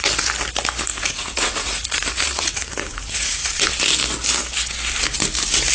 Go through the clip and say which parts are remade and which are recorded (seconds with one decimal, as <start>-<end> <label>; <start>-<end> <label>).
0.0-0.9 recorded; 0.9-3.5 remade; 3.5-5.7 recorded